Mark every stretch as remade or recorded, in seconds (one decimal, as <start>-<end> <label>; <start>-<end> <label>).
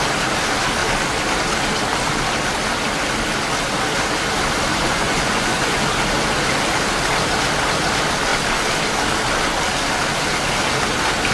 0.0-4.7 recorded; 4.7-5.8 remade; 5.8-11.3 recorded